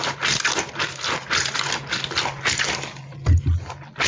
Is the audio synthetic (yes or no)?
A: no